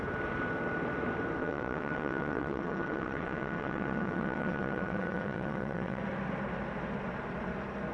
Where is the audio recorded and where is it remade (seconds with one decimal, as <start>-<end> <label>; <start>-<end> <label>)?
0.0-1.4 recorded; 1.4-6.0 remade; 6.0-7.9 recorded